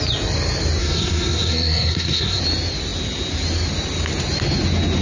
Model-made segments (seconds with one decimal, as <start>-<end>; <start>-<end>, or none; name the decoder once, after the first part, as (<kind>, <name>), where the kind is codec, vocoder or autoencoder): 0.8-2.4 (codec, SNAC)